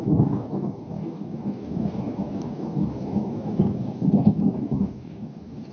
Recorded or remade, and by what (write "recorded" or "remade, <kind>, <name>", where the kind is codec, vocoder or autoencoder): remade, codec, DAC